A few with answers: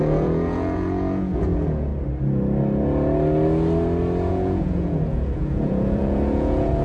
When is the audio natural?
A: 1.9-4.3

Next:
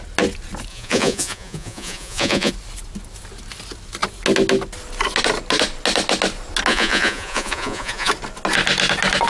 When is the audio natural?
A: 0.0-0.7; 2.5-6.7; 8.1-9.3

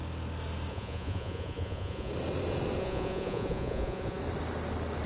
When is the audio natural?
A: 0.0-0.7; 2.1-2.8; 4.2-5.1

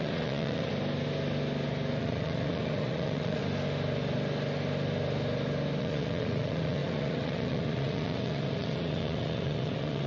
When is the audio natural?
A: 0.7-2.0; 3.4-5.8

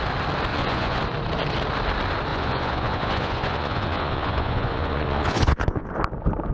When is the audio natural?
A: 0.0-0.5; 1.0-2.3; 5.9-6.5

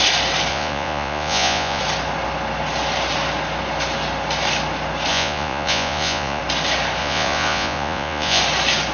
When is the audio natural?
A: 0.0-0.5; 1.8-5.1; 6.4-7.0; 8.4-8.9

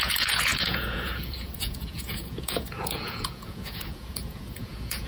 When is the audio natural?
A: none